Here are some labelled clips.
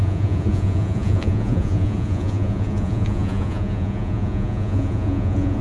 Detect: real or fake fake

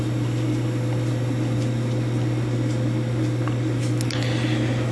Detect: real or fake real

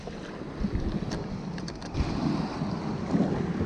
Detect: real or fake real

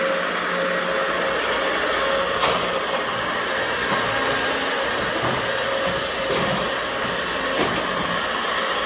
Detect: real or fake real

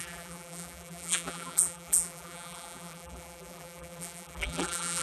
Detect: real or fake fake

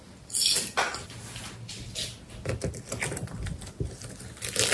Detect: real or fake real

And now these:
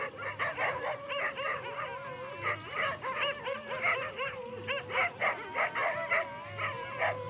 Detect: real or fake real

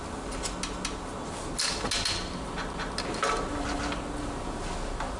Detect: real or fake real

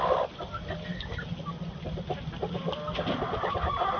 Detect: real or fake real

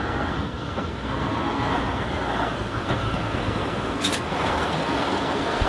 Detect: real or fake fake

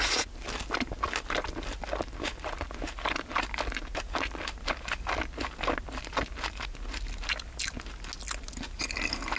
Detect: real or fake real